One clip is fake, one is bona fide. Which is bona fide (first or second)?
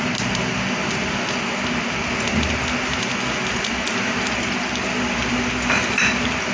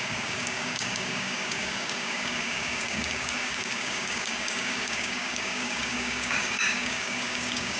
first